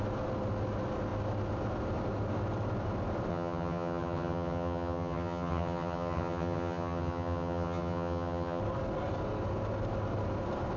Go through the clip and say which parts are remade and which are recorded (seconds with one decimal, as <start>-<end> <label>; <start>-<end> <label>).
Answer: 0.0-3.3 recorded; 3.3-8.6 remade; 8.6-10.8 recorded